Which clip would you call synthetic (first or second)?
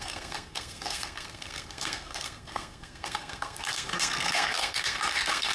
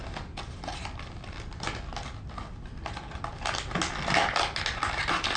first